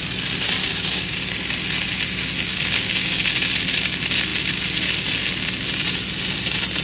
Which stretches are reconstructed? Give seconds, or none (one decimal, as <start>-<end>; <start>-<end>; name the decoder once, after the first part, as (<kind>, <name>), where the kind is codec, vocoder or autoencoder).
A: 0.6-1.2 (codec, DAC); 2.5-3.2